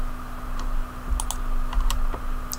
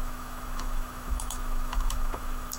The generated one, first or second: second